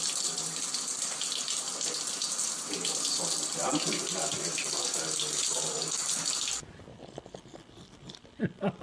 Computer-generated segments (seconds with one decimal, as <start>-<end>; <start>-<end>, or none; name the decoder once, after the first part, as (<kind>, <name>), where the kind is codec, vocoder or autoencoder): 0.0-3.7 (vocoder, BigVGAN v2); 5.7-8.8